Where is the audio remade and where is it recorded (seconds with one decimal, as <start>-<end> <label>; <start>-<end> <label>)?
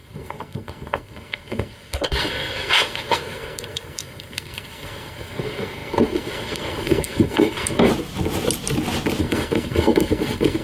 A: 0.0-7.9 remade; 7.9-9.2 recorded; 9.2-10.6 remade